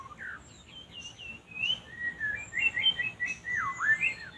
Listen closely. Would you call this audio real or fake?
real